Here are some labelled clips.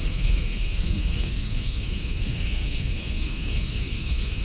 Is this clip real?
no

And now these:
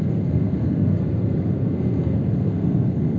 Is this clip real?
no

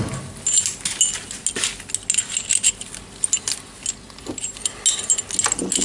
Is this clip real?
yes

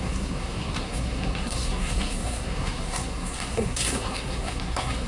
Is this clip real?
no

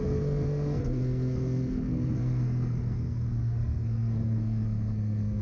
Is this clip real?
no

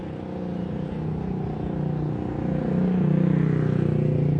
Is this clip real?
yes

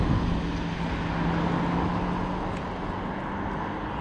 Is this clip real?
yes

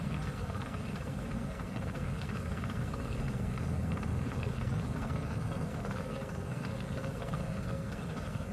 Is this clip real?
no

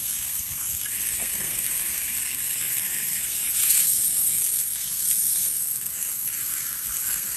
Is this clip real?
no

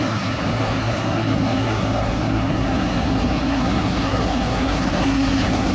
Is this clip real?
no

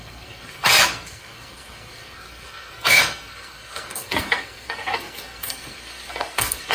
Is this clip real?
no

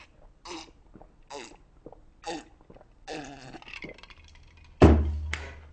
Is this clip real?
yes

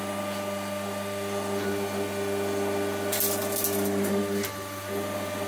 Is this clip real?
yes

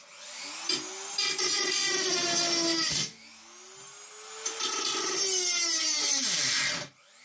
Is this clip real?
yes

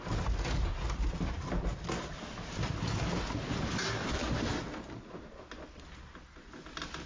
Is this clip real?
yes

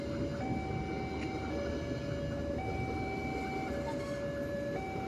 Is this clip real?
yes